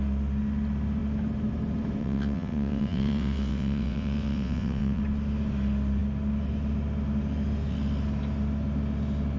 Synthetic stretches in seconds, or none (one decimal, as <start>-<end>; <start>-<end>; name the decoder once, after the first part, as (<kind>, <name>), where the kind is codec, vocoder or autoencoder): 2.0-5.0 (vocoder, WaveNeXt)